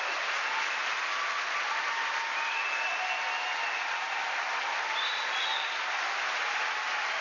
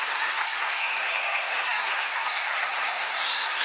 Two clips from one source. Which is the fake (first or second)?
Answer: second